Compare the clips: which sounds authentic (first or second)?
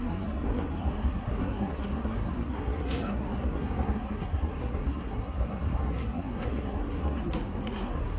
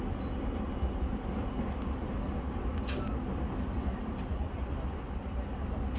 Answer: second